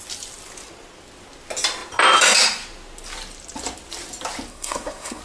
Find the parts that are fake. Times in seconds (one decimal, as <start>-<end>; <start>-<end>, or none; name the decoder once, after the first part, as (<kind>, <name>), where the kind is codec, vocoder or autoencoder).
4.5-5.2 (codec, SNAC)